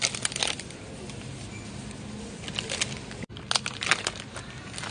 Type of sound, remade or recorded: recorded